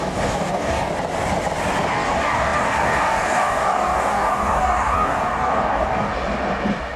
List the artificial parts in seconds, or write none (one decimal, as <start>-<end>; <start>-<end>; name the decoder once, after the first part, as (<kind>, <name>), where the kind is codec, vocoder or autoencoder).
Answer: 0.0-0.9 (codec, DAC); 1.9-6.1